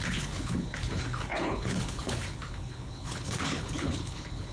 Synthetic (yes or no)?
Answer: yes